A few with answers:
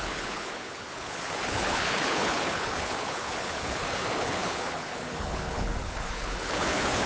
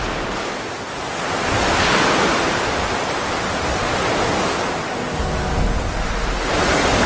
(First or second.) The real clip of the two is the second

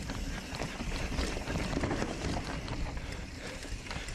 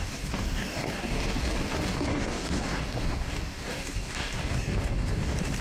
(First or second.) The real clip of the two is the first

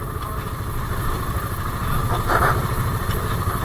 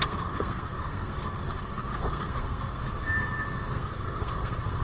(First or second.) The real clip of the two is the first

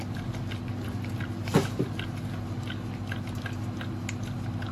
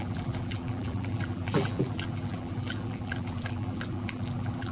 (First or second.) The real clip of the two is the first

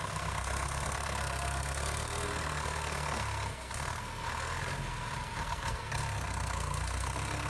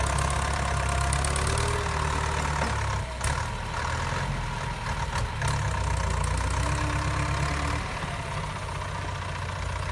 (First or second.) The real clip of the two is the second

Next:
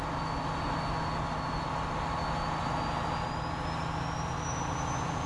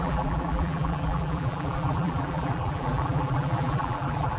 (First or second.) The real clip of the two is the first